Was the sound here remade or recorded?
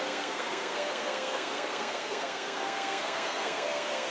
remade